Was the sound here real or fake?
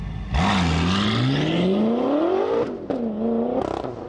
real